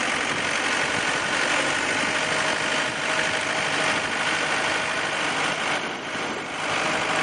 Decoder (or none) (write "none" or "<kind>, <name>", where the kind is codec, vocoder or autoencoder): none